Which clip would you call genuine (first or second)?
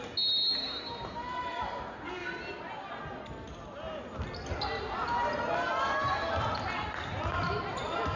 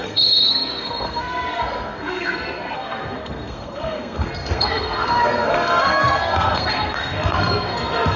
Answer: first